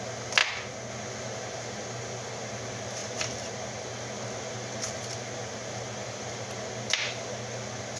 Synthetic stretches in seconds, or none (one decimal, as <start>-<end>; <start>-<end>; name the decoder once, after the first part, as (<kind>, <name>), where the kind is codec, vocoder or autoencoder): none